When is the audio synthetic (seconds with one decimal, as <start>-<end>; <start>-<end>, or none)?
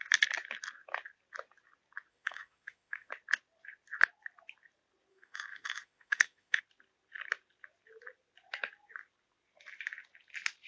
2.1-3.1; 5.1-6.6